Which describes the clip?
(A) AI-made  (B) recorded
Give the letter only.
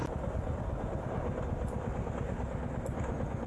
B